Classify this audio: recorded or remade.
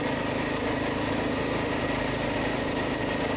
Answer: recorded